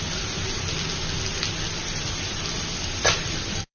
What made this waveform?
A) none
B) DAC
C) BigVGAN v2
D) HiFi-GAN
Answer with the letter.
C